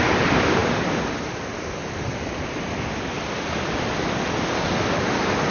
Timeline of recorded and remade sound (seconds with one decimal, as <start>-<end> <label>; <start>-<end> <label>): 0.0-5.5 recorded

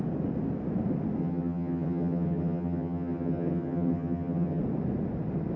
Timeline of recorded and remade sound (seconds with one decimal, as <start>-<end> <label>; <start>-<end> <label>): 0.0-1.2 recorded; 1.2-4.6 remade; 4.6-5.6 recorded